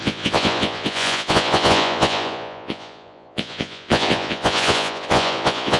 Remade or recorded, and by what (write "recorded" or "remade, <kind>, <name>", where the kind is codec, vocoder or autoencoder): remade, vocoder, Vocos